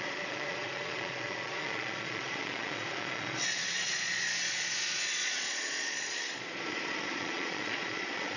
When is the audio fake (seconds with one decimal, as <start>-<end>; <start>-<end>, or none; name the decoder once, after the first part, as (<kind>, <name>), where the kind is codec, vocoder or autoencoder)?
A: 0.0-8.4 (vocoder, Vocos)